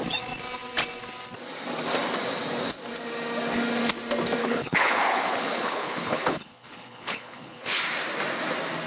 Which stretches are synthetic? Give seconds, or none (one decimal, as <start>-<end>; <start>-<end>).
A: 4.4-7.8